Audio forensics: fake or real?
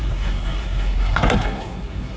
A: fake